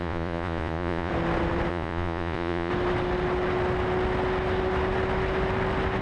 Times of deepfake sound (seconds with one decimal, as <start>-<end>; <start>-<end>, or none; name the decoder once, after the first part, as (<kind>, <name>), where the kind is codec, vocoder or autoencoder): 0.0-1.1 (vocoder, Vocos); 1.7-2.7